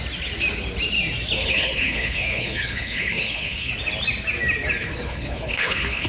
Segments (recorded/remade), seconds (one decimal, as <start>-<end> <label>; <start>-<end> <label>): 0.0-1.4 recorded; 1.4-3.7 remade; 3.7-4.8 recorded; 4.8-6.1 remade